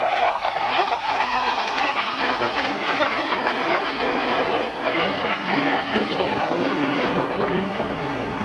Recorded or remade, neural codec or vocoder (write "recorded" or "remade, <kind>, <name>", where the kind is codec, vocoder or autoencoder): remade, codec, SNAC